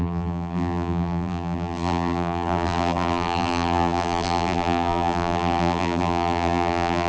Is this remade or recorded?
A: remade